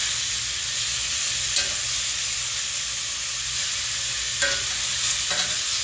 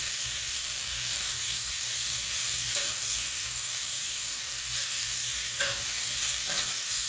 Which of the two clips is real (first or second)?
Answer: first